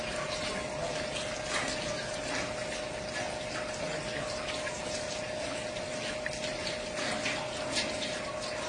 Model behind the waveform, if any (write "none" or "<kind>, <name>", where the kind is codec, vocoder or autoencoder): none